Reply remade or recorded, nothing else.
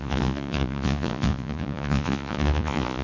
remade